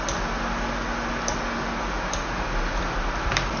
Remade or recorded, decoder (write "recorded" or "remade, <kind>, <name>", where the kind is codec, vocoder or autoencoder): recorded